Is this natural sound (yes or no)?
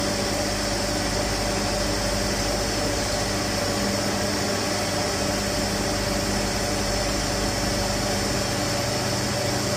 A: yes